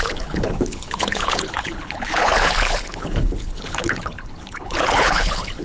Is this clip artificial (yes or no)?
yes